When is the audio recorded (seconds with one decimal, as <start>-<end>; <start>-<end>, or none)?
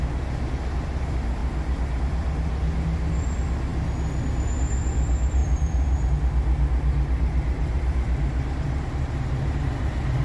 0.0-1.4; 2.0-5.4; 6.1-7.6; 8.8-10.2